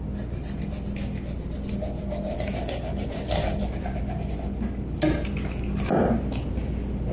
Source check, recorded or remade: recorded